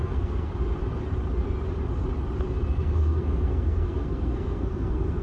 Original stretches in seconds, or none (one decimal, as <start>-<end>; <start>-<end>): 0.5-2.7